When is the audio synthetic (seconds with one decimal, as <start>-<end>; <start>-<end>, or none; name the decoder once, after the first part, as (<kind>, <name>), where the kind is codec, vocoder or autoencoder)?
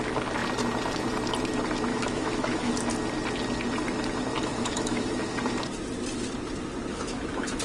1.9-2.7 (autoencoder, DAC-VAE); 4.5-5.2; 6.9-7.6